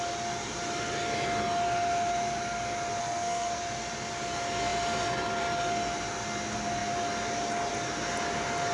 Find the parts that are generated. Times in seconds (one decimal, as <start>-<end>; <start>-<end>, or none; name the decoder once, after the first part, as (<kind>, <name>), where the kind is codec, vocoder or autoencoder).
3.0-3.6 (codec, SNAC)